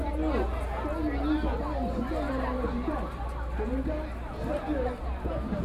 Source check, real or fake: real